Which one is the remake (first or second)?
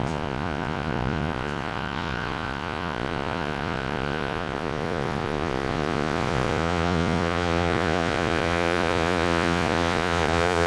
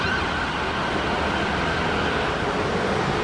first